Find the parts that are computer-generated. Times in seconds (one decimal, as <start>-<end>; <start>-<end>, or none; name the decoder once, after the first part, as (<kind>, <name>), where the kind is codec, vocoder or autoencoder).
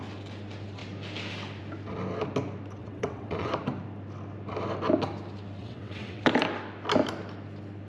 2.8-3.5 (vocoder, WaveNeXt); 5.6-6.2